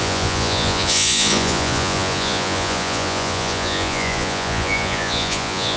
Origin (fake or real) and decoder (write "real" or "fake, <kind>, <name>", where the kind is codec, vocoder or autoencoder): fake, vocoder, Vocos